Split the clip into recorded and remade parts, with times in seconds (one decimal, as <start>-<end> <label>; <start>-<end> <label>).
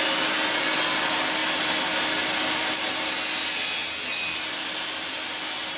0.0-5.8 recorded